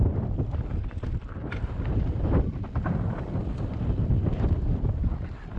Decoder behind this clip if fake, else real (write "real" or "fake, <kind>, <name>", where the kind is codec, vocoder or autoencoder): fake, vocoder, BigVGAN v2